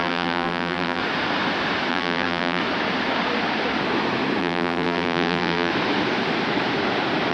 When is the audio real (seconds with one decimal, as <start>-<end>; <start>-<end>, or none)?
1.0-1.9; 2.6-4.4; 5.7-7.3